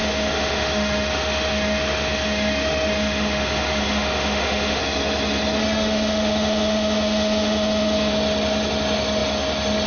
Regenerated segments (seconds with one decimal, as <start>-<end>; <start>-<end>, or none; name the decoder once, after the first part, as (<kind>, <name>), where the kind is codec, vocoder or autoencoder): 0.0-4.8 (autoencoder, DAC-VAE); 5.6-8.1

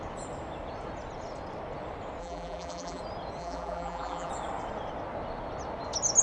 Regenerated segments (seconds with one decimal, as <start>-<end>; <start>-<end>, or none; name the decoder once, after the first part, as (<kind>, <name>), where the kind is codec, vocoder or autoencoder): 2.2-3.0 (vocoder, BigVGAN v2); 3.4-4.3

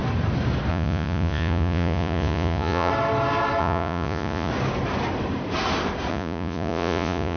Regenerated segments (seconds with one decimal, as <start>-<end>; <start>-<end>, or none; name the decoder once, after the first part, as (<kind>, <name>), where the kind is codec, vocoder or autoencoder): 0.7-2.9 (vocoder, Vocos); 3.6-4.5; 6.1-7.4

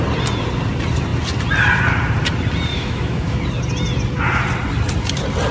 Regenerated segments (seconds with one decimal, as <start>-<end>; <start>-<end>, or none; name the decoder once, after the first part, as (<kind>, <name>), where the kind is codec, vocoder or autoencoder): 2.7-3.4 (autoencoder, DAC-VAE)

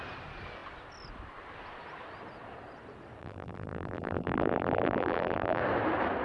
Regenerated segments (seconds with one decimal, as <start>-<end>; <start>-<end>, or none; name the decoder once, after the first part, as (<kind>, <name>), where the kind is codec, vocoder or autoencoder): 3.2-5.6 (vocoder, BigVGAN v2)

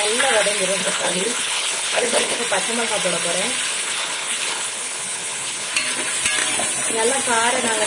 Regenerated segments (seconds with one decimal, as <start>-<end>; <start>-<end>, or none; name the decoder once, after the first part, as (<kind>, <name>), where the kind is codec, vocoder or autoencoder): 0.8-2.4 (codec, HILCodec); 3.7-5.7

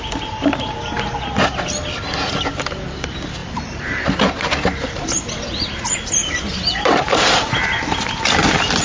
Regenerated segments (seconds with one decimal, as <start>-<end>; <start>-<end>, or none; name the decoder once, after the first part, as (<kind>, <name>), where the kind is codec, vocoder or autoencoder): 3.4-4.0 (vocoder, BigVGAN v2); 6.2-7.4